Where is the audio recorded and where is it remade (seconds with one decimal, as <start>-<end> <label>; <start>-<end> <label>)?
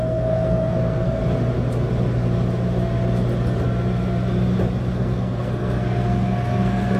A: 0.0-1.2 remade; 1.2-4.9 recorded; 4.9-7.0 remade